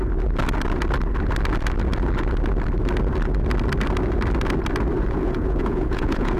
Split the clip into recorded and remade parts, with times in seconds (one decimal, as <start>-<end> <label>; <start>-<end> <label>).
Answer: 0.0-5.0 recorded; 5.0-6.4 remade